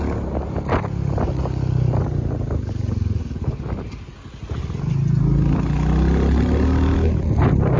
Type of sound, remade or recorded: recorded